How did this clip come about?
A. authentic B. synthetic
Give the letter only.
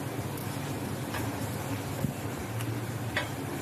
A